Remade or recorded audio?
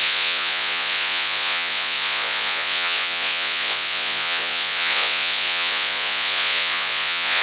remade